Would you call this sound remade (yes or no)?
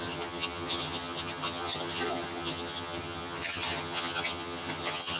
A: yes